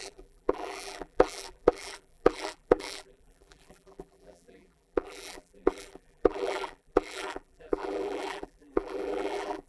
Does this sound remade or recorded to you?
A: remade